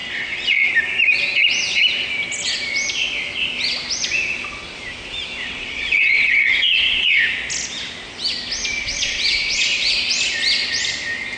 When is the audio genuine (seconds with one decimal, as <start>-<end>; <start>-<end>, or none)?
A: 0.7-5.4; 7.2-8.8; 9.9-11.4

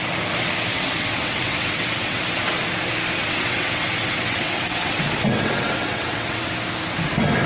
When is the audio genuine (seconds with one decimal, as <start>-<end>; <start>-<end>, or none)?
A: 0.0-0.7; 2.2-3.2; 6.5-7.5

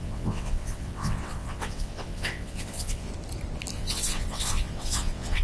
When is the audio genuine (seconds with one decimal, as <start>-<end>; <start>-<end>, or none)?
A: 3.1-3.7

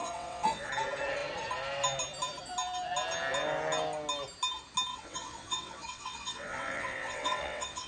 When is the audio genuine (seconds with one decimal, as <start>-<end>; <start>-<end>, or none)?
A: 0.7-4.9

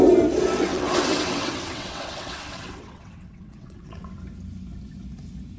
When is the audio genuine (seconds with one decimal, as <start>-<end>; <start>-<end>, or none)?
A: 0.0-0.7; 4.1-5.6

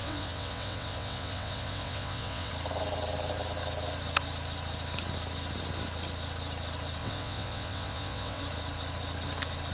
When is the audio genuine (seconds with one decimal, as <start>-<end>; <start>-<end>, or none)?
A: 2.5-7.0; 8.4-9.7

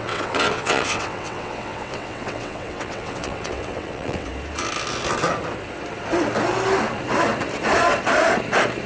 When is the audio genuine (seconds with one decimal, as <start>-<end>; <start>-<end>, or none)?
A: 4.3-8.9

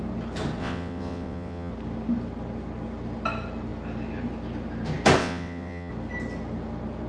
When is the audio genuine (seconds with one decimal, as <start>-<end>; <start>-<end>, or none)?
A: 0.0-0.6; 1.7-5.2; 5.9-7.1